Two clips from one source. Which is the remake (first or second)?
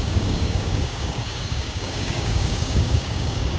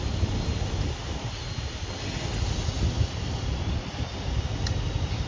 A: first